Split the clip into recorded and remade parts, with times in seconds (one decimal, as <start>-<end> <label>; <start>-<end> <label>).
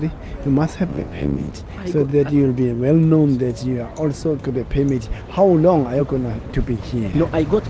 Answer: 0.0-0.9 recorded; 0.9-1.5 remade; 1.5-7.7 recorded